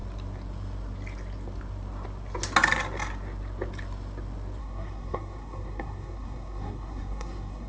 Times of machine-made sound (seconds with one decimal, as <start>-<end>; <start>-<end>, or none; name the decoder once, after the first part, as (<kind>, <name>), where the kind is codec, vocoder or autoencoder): 4.6-7.7 (codec, SNAC)